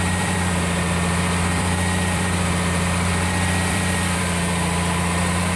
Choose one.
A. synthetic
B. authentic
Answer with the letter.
A